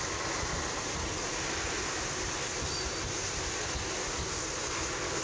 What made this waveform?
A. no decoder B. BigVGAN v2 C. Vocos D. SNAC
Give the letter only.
A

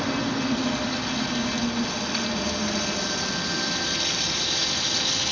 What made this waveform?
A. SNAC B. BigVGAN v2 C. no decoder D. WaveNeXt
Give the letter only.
C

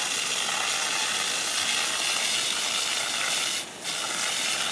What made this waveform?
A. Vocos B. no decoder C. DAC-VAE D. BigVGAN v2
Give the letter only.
B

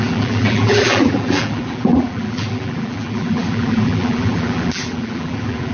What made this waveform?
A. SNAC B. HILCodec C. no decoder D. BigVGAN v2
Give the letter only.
D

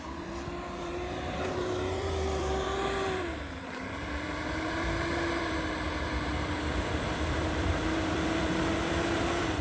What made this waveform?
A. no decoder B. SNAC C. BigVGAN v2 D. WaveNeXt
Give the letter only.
C